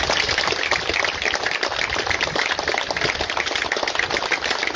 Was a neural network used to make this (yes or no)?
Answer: no